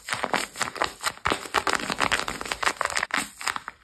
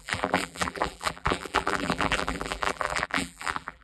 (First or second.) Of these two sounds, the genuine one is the first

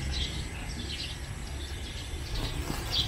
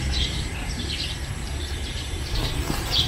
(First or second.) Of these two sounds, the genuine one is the first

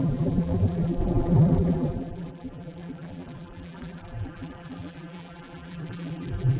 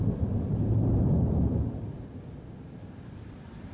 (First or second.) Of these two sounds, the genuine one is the second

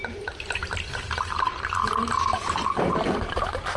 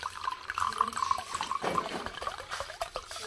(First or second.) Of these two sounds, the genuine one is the first